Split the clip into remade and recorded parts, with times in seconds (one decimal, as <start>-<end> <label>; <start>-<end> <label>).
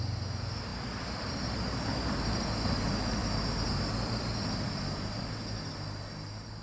0.0-6.6 recorded